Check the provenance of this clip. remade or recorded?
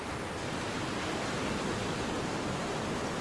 recorded